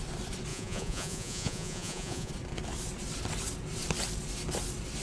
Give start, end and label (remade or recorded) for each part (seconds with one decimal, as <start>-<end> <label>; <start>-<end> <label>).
0.0-0.5 recorded; 0.5-2.3 remade; 2.3-5.0 recorded